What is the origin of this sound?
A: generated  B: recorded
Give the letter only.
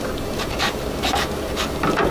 B